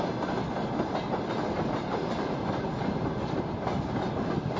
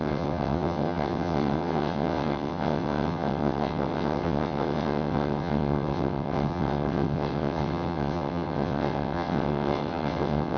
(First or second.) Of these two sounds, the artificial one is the second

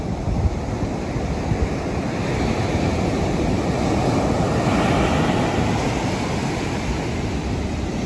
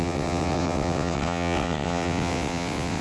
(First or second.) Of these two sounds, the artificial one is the second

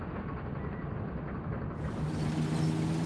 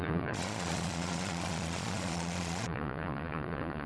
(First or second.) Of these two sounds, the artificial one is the second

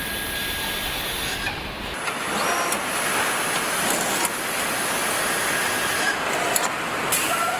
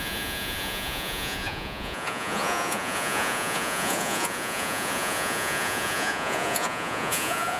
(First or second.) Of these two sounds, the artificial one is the second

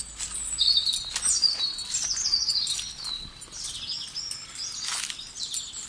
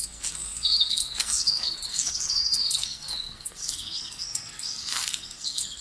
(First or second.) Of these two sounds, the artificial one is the second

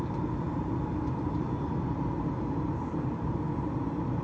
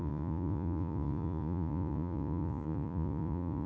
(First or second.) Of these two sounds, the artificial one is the second